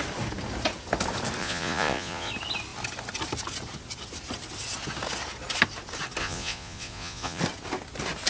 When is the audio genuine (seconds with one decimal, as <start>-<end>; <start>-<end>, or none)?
0.0-1.4; 2.3-6.2; 7.4-8.3